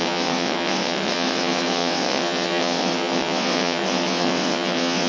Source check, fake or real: fake